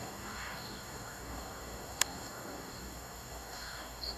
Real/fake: fake